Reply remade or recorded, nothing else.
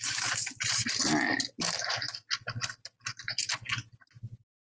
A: recorded